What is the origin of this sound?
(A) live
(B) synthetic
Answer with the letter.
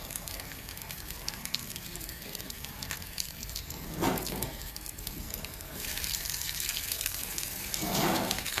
B